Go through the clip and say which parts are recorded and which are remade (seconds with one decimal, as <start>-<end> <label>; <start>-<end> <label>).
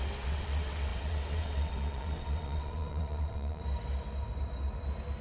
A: 0.0-3.6 remade; 3.6-5.2 recorded